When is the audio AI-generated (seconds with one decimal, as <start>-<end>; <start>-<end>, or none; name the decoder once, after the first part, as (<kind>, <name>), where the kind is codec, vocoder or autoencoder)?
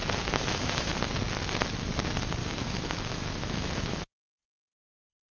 0.0-1.0 (autoencoder, DAC-VAE); 2.4-5.3